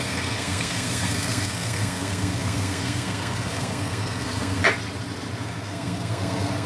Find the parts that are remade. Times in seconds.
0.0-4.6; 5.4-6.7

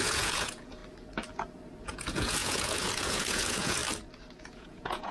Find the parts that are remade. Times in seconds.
0.0-0.8; 1.8-3.8; 4.4-5.1

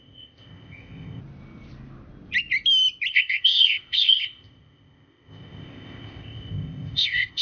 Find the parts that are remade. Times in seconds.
0.0-1.2; 3.1-7.4